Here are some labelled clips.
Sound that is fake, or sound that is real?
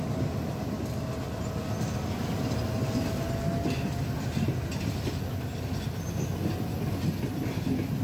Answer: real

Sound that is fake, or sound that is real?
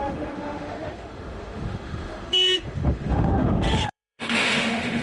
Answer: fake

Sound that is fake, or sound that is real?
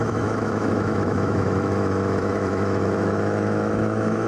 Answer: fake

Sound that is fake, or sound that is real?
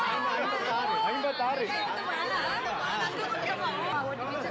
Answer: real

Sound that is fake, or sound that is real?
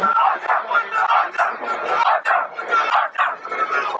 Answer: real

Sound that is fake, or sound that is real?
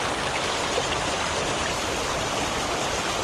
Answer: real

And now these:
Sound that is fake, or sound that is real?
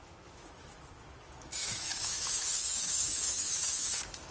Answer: fake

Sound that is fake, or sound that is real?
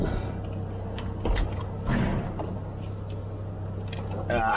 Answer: real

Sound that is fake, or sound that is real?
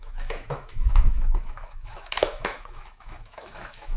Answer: fake